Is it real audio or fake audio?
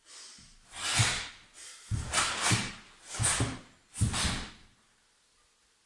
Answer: real